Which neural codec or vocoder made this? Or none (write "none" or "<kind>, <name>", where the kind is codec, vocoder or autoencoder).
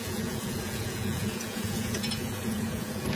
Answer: vocoder, Vocos